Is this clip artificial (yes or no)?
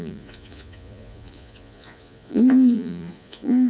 yes